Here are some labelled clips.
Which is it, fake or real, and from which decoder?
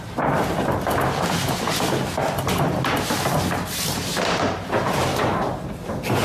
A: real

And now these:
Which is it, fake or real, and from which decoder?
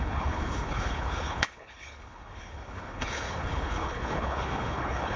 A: fake, codec, HILCodec